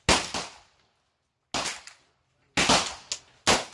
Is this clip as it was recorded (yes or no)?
yes